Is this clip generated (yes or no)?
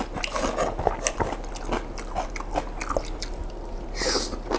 no